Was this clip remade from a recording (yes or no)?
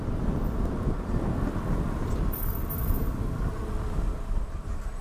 no